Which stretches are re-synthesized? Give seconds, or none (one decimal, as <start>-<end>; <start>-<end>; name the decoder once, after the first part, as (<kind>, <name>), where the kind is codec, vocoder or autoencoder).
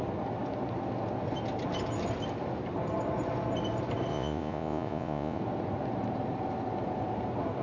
4.1-5.4 (vocoder, Vocos)